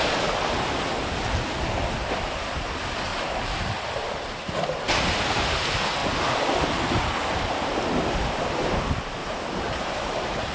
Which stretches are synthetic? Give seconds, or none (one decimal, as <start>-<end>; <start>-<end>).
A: 3.1-4.5; 9.2-10.5